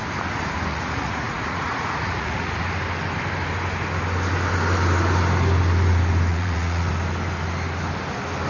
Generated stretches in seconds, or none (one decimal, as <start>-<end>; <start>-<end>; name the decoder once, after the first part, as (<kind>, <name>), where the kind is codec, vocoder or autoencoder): 0.7-2.6 (vocoder, Vocos); 6.3-6.9